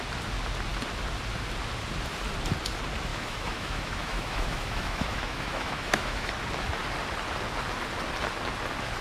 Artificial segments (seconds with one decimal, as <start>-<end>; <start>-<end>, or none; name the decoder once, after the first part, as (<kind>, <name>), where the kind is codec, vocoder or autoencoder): 3.1-6.3 (autoencoder, DAC-VAE)